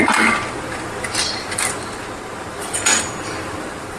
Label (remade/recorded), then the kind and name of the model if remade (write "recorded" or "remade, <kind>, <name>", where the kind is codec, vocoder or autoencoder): recorded